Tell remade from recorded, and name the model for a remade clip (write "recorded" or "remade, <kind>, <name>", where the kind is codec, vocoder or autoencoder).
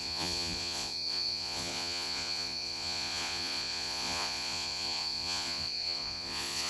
remade, vocoder, Vocos